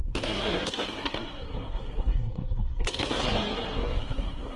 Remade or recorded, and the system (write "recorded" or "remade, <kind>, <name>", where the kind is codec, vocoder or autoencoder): remade, codec, SNAC